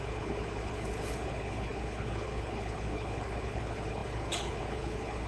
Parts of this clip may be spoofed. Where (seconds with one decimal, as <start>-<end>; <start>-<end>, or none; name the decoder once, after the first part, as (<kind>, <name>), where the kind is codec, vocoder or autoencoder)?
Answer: 0.0-5.3 (codec, HILCodec)